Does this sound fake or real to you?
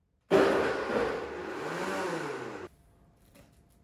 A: real